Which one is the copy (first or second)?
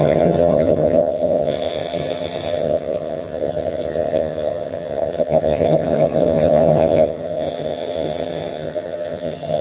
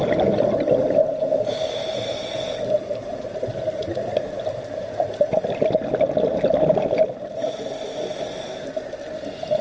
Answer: first